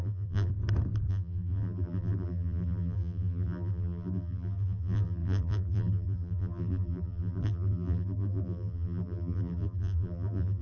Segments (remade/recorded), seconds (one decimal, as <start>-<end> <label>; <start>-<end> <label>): 0.0-0.5 remade; 0.5-1.1 recorded; 1.1-10.6 remade